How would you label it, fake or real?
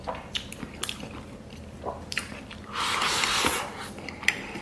fake